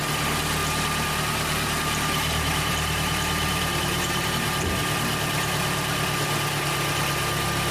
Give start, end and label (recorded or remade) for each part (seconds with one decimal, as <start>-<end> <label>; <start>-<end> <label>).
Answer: 0.0-0.6 recorded; 0.6-4.3 remade; 4.3-7.7 recorded